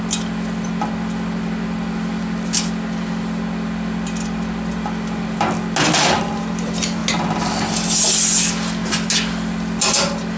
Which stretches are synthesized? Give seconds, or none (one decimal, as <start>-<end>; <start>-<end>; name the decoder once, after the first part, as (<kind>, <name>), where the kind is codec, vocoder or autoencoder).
none